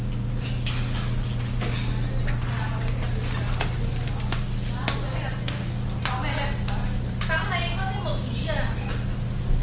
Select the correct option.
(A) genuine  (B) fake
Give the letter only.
A